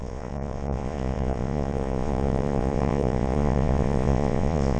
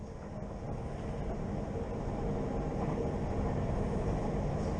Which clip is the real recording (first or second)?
second